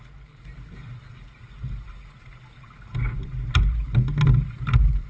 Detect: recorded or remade recorded